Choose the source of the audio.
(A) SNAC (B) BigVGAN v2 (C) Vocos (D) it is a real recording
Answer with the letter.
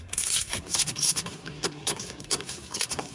A